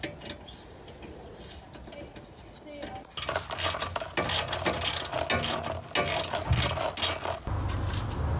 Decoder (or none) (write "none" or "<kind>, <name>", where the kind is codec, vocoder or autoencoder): none